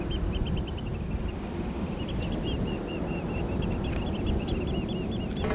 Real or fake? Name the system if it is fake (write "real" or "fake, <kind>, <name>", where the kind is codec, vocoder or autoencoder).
real